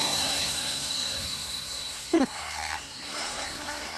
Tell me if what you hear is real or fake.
fake